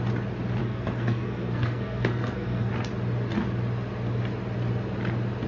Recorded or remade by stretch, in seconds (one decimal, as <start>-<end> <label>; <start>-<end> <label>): 0.0-0.6 recorded; 0.6-2.7 remade; 2.7-5.5 recorded